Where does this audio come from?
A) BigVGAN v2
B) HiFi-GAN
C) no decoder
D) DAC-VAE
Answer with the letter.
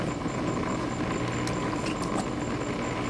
C